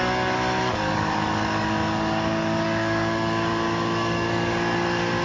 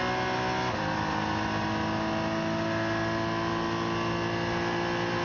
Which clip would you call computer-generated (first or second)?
first